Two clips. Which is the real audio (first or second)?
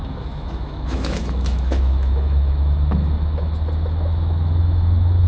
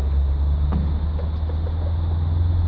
second